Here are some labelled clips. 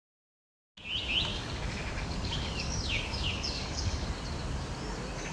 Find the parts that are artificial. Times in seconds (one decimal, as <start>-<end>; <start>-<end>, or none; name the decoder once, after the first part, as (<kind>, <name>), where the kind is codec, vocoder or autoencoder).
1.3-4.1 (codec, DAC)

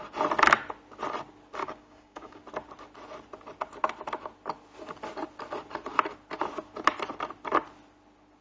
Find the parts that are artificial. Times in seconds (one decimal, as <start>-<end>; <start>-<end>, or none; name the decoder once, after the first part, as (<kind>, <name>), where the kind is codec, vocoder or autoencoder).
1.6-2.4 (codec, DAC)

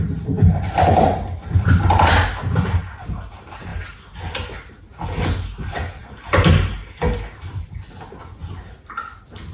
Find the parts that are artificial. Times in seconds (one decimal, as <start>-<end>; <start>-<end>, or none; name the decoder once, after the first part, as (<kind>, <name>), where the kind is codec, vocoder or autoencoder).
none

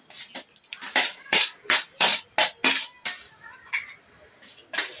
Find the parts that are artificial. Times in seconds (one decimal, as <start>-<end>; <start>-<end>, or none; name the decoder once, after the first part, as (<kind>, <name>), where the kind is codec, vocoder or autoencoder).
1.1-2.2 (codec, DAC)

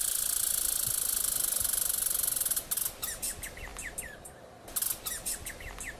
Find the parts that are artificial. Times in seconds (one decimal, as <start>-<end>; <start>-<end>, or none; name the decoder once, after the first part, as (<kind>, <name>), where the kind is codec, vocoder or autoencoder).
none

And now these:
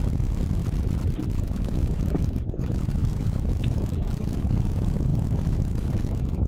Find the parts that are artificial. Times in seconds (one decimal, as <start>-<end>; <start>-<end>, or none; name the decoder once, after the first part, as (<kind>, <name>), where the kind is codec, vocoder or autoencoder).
0.0-0.6 (codec, DAC); 1.3-6.5

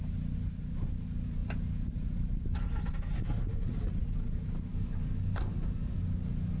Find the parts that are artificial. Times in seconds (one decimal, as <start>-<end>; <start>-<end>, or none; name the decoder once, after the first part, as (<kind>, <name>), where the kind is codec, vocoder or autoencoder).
4.7-6.0 (codec, DAC)